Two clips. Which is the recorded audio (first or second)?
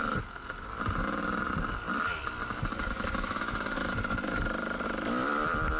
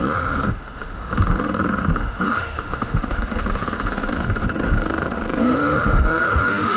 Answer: first